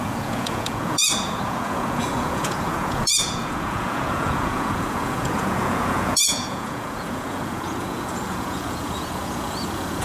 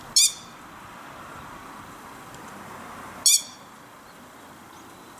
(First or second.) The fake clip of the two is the first